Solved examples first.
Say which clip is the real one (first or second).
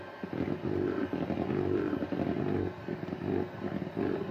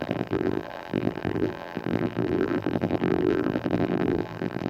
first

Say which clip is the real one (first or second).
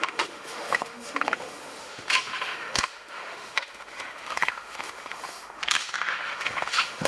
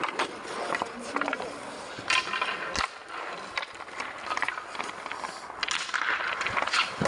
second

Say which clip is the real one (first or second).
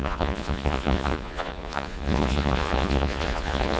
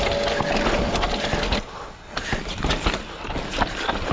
second